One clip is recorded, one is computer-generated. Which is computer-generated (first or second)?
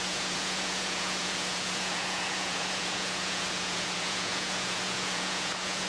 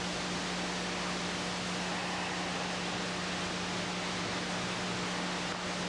first